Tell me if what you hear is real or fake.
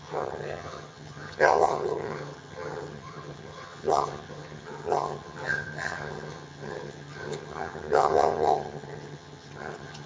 fake